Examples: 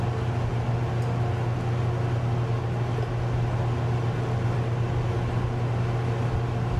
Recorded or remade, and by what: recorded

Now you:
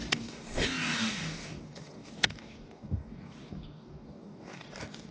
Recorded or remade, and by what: remade, codec, DAC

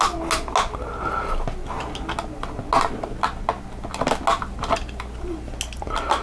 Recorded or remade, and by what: recorded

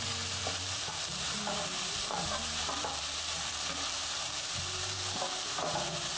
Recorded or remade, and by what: remade, vocoder, BigVGAN v2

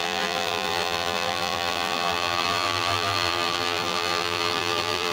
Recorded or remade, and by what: remade, vocoder, BigVGAN v2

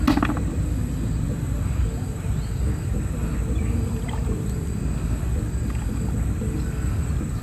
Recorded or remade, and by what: recorded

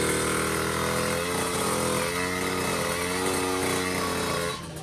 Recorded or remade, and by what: recorded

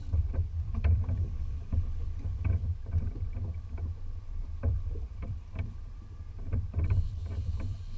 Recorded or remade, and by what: remade, vocoder, BigVGAN v2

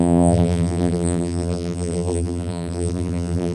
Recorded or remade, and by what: remade, vocoder, BigVGAN v2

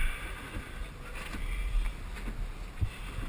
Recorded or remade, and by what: recorded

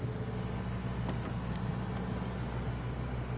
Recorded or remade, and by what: recorded